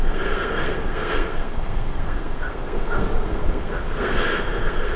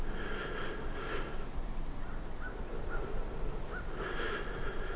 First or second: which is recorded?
second